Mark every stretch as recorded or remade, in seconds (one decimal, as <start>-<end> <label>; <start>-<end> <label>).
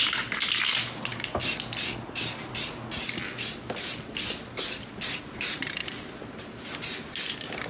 0.0-7.7 recorded